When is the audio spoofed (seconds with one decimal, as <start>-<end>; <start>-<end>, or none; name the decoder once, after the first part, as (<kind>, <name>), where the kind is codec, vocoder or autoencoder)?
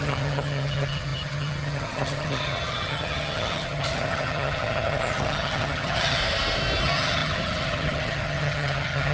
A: 0.0-6.2 (vocoder, HiFi-GAN); 6.8-9.1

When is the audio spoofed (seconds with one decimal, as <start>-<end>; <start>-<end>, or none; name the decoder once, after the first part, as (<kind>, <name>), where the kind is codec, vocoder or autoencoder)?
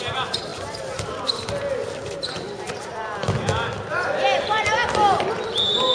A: none